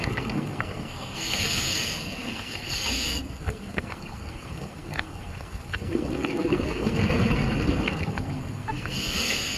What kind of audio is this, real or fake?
fake